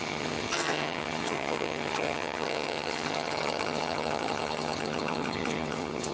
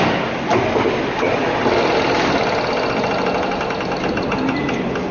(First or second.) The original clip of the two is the second